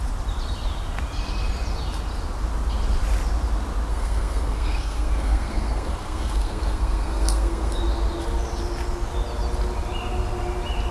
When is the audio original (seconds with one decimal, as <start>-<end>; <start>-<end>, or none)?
0.0-3.9; 7.8-10.9